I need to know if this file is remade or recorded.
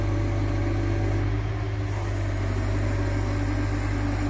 recorded